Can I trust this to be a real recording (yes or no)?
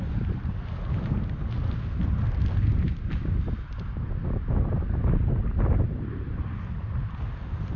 yes